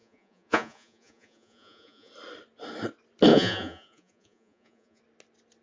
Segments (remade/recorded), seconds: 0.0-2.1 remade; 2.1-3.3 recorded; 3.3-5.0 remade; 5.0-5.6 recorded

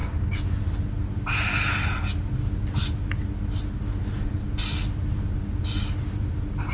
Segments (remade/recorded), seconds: 0.0-6.7 recorded